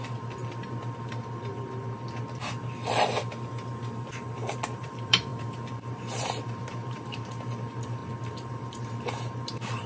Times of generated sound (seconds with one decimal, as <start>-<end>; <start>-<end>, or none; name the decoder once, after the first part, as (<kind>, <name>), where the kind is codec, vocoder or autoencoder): 0.0-0.4 (vocoder, BigVGAN v2); 1.0-1.5; 4.8-8.0; 8.5-9.9